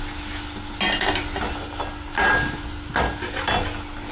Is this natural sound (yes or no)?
yes